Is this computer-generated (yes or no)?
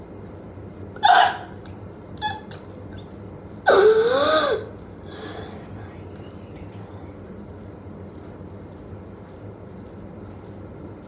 no